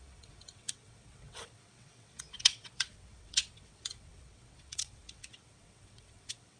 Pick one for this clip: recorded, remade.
remade